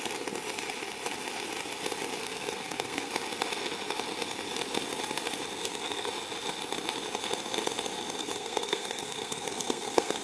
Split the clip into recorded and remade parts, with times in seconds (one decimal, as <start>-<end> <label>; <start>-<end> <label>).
0.0-2.2 recorded; 2.2-3.1 remade; 3.1-5.6 recorded; 5.6-6.1 remade; 6.1-8.2 recorded; 8.2-10.2 remade